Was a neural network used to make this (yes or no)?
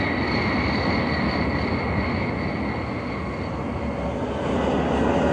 no